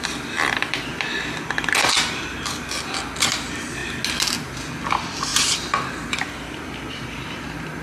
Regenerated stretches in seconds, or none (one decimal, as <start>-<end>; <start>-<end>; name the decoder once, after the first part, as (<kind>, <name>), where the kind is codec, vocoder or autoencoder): 0.0-1.1 (vocoder, BigVGAN v2); 3.3-3.8; 4.7-7.8